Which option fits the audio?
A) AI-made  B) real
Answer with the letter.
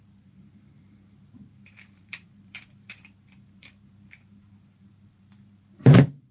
A